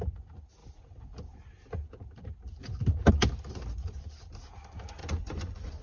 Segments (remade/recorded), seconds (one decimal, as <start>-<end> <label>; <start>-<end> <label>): 0.0-5.0 recorded; 5.0-5.8 remade